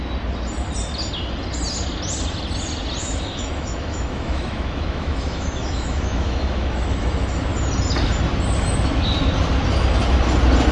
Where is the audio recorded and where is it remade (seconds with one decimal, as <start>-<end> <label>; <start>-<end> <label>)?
0.0-3.0 recorded; 3.0-7.4 remade; 7.4-10.7 recorded